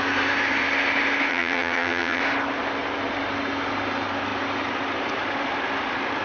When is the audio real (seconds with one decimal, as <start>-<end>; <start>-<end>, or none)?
0.0-1.3; 2.2-6.2